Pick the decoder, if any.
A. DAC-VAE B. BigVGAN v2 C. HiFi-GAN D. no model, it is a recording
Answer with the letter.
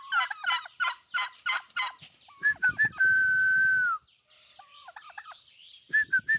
D